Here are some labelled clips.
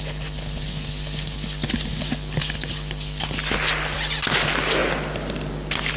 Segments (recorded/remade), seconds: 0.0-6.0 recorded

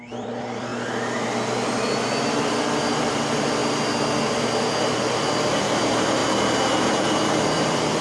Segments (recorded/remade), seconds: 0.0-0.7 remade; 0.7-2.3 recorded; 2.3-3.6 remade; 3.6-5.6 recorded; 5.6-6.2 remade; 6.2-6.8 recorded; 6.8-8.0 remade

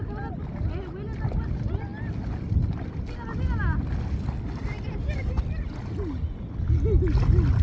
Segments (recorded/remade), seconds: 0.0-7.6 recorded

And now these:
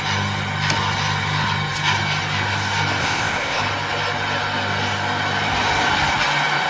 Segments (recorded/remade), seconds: 0.0-3.0 recorded; 3.0-3.6 remade; 3.6-6.7 recorded

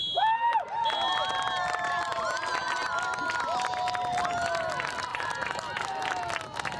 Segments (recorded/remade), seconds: 0.0-5.1 recorded; 5.1-6.2 remade; 6.2-6.8 recorded

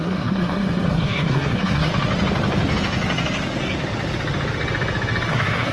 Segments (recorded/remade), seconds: 0.0-1.9 remade; 1.9-5.3 recorded; 5.3-5.7 remade